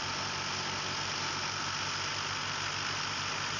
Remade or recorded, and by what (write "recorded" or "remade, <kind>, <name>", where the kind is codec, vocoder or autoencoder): recorded